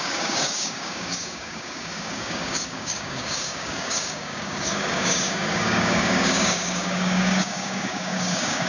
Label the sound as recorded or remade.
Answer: remade